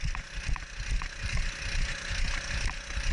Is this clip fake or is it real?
real